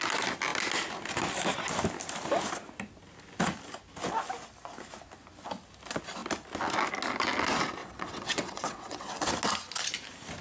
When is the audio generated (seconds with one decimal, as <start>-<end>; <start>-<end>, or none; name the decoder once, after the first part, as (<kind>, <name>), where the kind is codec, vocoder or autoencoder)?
7.8-9.3 (vocoder, WaveNeXt)

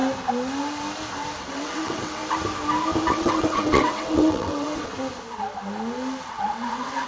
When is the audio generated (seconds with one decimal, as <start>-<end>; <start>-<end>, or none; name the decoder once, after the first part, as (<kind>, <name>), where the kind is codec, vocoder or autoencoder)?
1.4-2.2 (vocoder, WaveNeXt); 3.1-4.9; 6.3-7.1